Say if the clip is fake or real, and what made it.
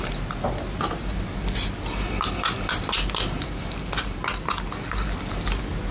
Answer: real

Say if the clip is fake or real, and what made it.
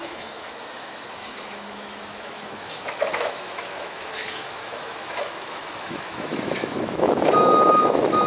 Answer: fake, autoencoder, DAC-VAE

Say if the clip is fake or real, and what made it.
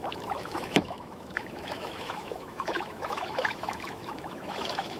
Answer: fake, autoencoder, DAC-VAE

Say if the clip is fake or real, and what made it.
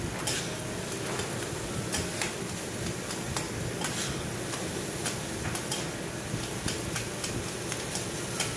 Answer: real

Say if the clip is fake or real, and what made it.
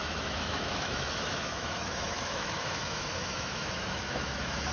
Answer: fake, autoencoder, DAC-VAE